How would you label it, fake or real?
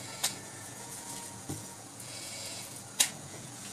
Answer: fake